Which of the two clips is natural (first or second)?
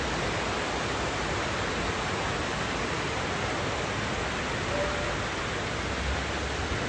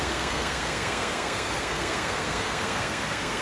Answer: first